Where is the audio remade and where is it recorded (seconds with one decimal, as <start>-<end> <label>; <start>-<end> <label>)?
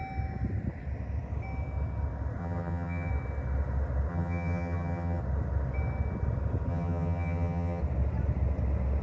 0.0-2.4 recorded; 2.4-3.1 remade; 3.1-4.1 recorded; 4.1-5.2 remade; 5.2-6.7 recorded; 6.7-7.8 remade; 7.8-9.0 recorded